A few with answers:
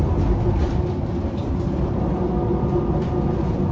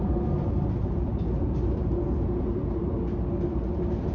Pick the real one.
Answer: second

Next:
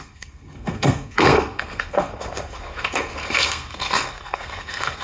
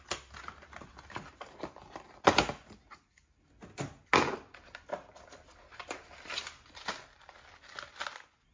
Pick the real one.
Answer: second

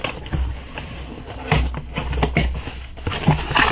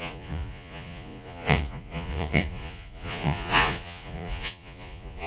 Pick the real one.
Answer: first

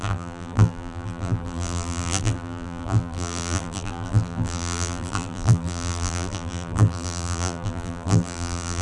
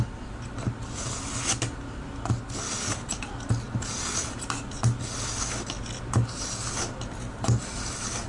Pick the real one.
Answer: second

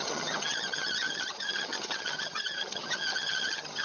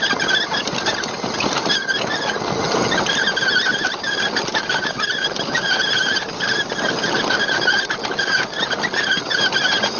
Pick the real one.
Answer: second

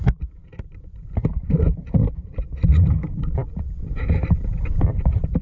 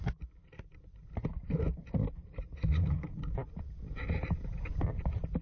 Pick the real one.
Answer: second